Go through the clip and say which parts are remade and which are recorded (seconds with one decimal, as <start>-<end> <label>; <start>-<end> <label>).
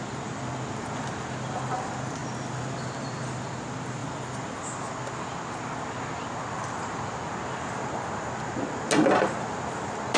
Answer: 0.0-10.2 recorded